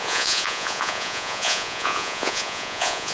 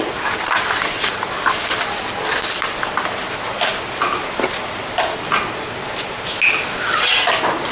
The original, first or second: second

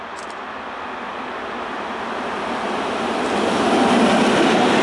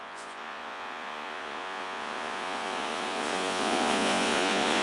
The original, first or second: first